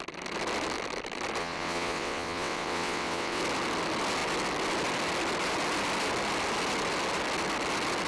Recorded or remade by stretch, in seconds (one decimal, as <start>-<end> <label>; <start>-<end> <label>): 0.0-1.4 recorded; 1.4-3.4 remade; 3.4-8.1 recorded